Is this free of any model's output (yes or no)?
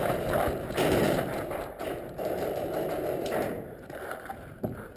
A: no